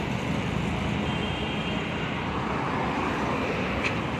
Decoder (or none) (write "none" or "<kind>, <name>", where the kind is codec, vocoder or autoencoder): none